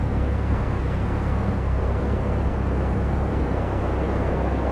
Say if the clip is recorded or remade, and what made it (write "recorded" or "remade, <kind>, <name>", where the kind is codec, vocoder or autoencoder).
remade, codec, SNAC